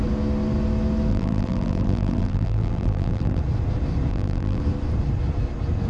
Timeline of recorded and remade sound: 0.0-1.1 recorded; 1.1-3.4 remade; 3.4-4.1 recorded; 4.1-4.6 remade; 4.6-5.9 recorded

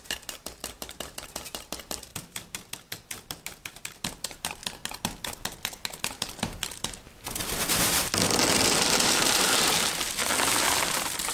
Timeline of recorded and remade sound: 0.0-4.6 remade; 4.6-6.2 recorded; 6.2-7.4 remade; 7.4-8.5 recorded; 8.5-10.2 remade; 10.2-10.9 recorded; 10.9-11.3 remade

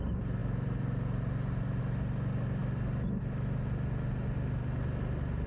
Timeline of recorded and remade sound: 0.0-5.5 recorded

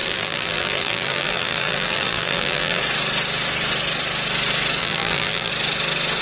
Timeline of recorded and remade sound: 0.0-2.8 remade; 2.8-4.8 recorded; 4.8-5.5 remade; 5.5-6.2 recorded

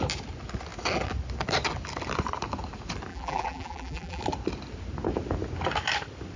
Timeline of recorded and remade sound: 0.0-3.1 recorded; 3.1-4.2 remade; 4.2-6.4 recorded